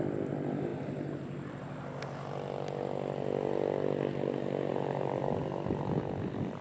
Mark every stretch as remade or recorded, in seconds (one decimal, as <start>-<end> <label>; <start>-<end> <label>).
0.0-6.6 recorded